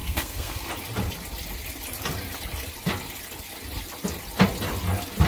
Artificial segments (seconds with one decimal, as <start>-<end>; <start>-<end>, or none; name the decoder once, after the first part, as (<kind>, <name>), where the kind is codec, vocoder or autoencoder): 0.0-0.7 (codec, SNAC)